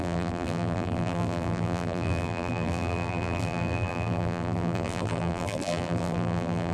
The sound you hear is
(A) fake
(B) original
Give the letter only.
A